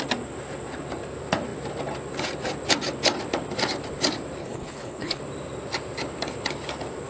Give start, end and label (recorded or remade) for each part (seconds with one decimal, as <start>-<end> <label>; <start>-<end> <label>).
0.0-4.4 recorded; 4.4-5.2 remade; 5.2-7.1 recorded